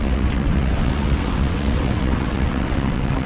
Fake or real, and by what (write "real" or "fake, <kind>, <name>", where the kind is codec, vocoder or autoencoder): fake, vocoder, WaveNeXt